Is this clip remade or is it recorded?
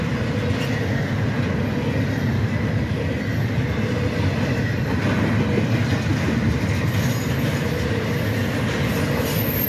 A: recorded